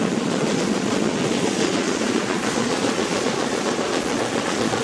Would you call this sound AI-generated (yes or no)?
yes